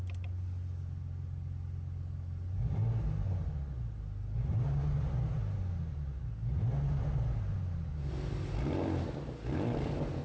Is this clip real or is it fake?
real